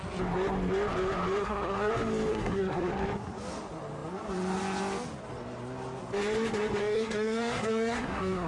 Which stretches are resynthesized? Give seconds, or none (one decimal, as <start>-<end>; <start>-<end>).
1.4-1.9; 2.3-2.9; 6.8-8.5